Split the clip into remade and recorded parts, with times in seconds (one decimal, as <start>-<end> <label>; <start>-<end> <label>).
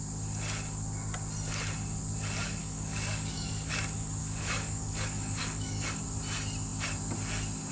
0.0-2.6 recorded; 2.6-3.7 remade; 3.7-4.2 recorded; 4.2-6.0 remade; 6.0-7.7 recorded